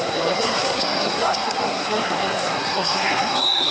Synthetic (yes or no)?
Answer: yes